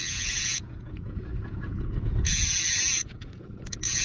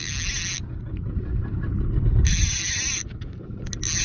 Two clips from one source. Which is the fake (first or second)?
first